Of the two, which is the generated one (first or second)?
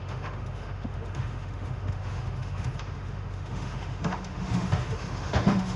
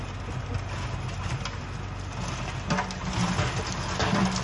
first